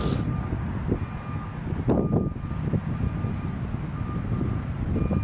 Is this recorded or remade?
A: recorded